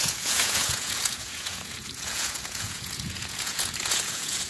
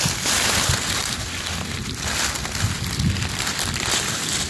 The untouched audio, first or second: second